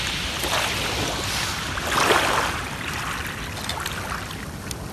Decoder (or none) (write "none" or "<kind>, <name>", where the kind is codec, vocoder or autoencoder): none